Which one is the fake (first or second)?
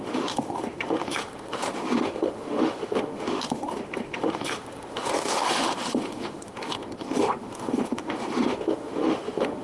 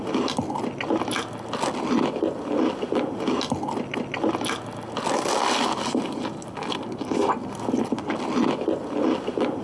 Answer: first